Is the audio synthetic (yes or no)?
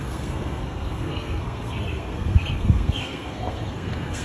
yes